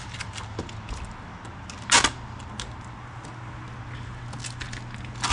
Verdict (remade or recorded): recorded